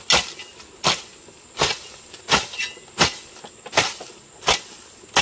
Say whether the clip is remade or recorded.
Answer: recorded